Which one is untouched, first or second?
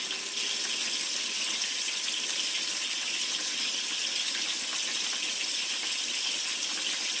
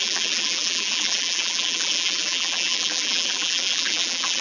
first